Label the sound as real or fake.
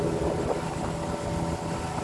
real